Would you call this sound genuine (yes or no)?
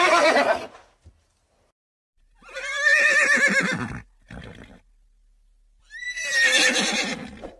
yes